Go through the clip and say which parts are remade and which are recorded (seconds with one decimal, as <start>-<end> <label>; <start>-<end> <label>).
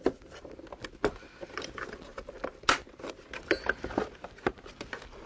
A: 0.0-5.3 recorded